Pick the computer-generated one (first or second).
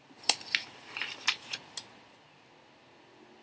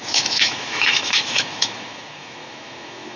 second